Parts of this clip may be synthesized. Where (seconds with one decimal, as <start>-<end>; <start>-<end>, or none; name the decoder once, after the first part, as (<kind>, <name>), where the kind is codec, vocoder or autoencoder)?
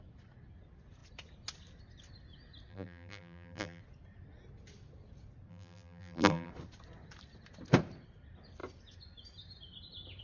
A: 2.7-3.8 (vocoder, BigVGAN v2); 5.5-6.5